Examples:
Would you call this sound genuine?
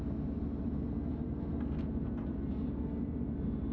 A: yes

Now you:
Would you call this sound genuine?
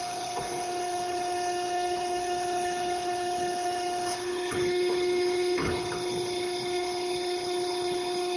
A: no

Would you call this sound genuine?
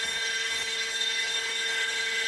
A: no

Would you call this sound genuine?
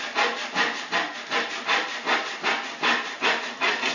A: yes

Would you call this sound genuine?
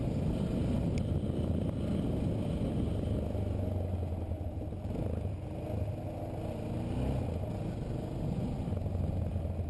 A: yes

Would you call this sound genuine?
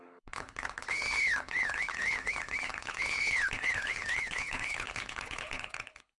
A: no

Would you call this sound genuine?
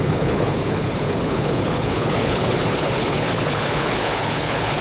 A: no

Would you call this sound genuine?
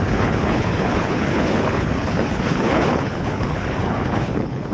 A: no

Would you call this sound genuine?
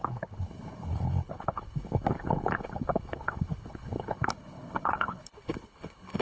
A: no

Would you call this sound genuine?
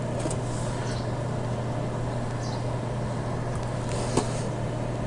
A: yes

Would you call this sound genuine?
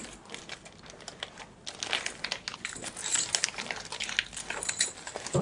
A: yes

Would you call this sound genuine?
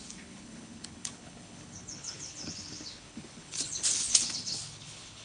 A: no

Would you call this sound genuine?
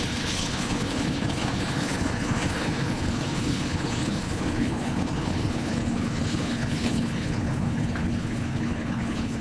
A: no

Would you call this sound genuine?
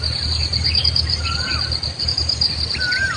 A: yes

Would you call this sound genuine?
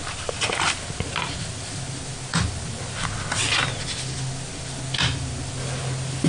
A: yes